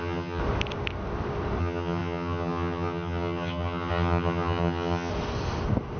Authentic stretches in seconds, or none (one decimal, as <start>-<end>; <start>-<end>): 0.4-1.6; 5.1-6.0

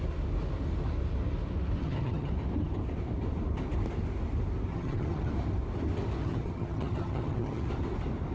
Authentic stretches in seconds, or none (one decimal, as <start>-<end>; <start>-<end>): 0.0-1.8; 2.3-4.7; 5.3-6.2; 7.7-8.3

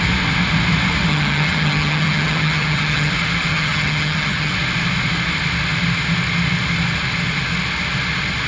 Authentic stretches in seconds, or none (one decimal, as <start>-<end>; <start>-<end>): 0.0-1.1; 3.1-3.5; 4.5-8.5